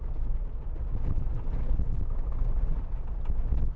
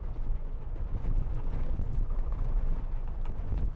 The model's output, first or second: second